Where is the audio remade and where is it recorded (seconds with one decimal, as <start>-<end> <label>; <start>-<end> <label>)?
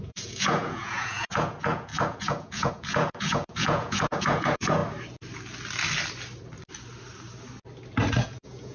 0.0-4.8 remade; 4.8-8.1 recorded; 8.1-8.7 remade